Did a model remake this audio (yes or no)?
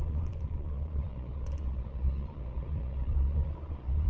yes